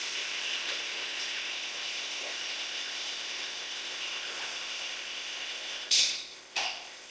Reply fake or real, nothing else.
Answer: fake